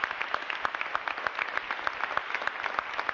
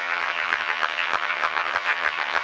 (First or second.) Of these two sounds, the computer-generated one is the second